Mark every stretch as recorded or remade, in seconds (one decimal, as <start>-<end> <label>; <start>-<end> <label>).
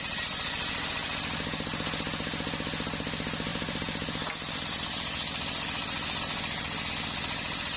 0.0-3.5 recorded; 3.5-6.9 remade; 6.9-7.8 recorded